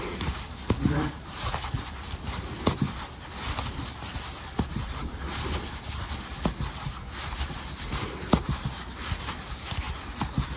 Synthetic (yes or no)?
no